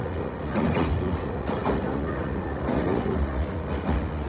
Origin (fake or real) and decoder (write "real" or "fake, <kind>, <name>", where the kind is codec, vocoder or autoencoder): fake, vocoder, Vocos